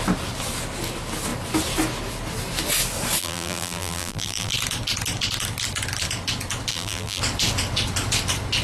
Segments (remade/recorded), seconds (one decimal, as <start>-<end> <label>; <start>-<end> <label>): 0.0-3.2 recorded; 3.2-4.5 remade; 4.5-6.7 recorded; 6.7-7.2 remade; 7.2-8.6 recorded